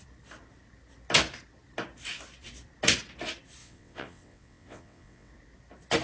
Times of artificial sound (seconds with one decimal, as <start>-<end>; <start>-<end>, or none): 3.6-5.3